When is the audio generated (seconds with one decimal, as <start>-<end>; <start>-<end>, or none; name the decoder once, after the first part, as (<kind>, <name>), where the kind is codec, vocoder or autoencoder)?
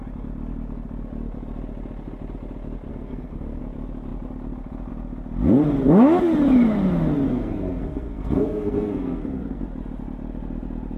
2.9-3.6 (codec, SNAC); 7.3-9.6